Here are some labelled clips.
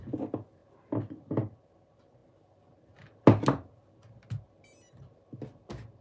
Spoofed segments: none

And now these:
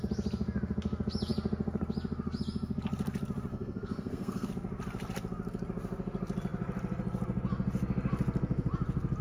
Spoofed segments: 3.5-4.5 (codec, SNAC)

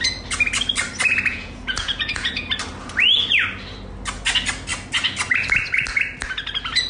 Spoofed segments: 1.3-2.3 (vocoder, Vocos)